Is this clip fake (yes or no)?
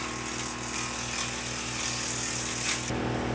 no